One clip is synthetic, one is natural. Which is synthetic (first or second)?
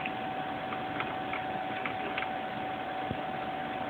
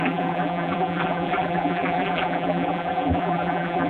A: second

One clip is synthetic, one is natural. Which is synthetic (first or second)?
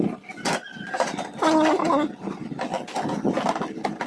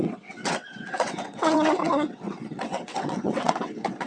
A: second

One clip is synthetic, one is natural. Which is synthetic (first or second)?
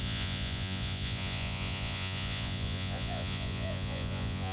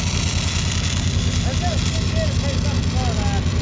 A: first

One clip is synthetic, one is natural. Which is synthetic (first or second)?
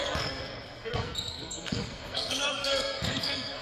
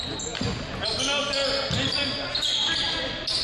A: first